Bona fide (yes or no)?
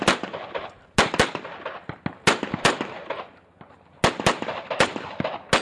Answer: yes